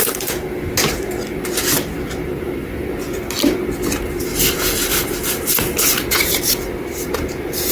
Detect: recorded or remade recorded